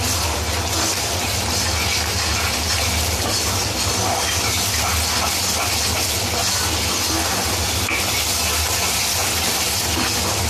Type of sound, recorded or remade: recorded